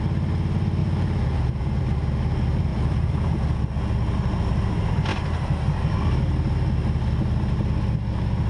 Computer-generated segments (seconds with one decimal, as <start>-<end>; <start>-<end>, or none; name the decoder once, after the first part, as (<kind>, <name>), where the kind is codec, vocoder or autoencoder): 0.8-1.8 (vocoder, Vocos); 2.7-3.6